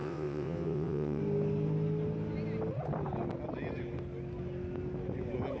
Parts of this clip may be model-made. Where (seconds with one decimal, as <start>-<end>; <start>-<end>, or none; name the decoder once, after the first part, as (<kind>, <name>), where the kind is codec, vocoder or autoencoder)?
0.0-1.2 (vocoder, WaveNeXt)